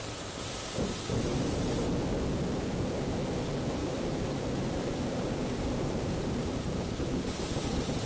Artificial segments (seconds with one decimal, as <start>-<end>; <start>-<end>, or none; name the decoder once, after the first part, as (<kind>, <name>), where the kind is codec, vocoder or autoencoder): 3.8-6.9 (vocoder, BigVGAN v2)

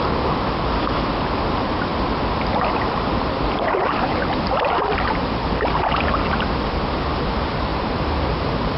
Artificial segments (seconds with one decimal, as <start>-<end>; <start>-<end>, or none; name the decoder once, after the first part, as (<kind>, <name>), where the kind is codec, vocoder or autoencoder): none

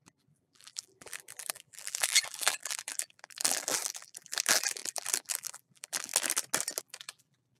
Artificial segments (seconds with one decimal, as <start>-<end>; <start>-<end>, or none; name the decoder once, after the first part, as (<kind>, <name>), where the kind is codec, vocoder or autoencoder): 0.0-6.1 (vocoder, BigVGAN v2); 6.8-7.6

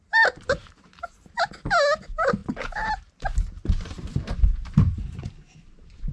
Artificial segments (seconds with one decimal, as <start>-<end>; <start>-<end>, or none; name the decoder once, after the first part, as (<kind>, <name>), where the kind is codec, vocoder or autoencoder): 0.6-1.5 (vocoder, BigVGAN v2); 2.4-6.1

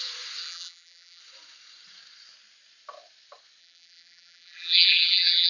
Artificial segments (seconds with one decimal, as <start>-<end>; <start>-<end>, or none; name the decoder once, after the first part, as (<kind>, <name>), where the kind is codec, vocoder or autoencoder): 0.4-1.2 (vocoder, BigVGAN v2); 3.6-5.5

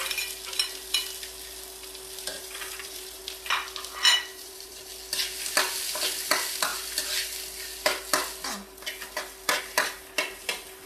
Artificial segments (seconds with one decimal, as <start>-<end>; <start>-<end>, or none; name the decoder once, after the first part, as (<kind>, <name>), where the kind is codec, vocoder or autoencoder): 2.3-3.2 (vocoder, BigVGAN v2); 4.3-4.9